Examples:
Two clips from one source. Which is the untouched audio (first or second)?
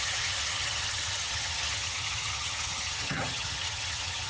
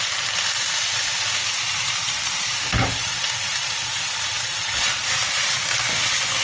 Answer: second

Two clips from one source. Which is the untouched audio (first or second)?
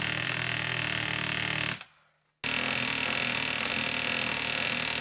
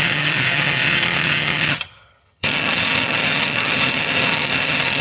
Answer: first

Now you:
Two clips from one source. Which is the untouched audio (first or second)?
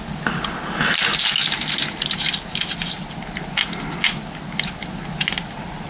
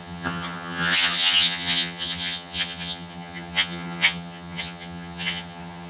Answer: first